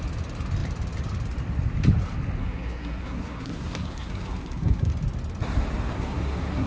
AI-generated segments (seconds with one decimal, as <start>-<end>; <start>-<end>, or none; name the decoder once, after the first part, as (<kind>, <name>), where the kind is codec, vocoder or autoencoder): 2.4-4.9 (codec, SNAC); 5.9-6.7

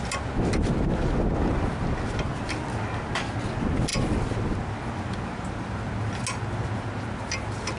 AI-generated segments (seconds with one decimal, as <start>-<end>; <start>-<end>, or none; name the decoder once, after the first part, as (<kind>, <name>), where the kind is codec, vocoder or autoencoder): none